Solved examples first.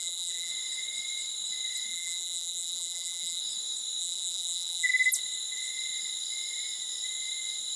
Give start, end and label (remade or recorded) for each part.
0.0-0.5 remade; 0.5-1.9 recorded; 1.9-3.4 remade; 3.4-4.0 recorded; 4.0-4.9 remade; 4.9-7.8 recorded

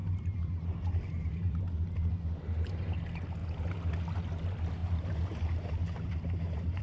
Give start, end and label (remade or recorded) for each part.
0.0-1.6 remade; 1.6-4.8 recorded; 4.8-6.8 remade

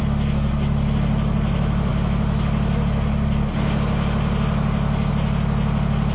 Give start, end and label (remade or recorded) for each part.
0.0-6.1 recorded

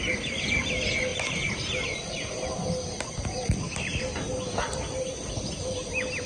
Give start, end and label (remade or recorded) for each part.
0.0-6.3 recorded

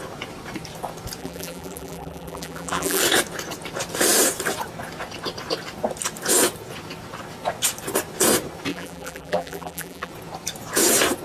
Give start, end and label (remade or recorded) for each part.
0.0-1.2 recorded; 1.2-3.0 remade; 3.0-8.7 recorded; 8.7-10.1 remade; 10.1-11.2 recorded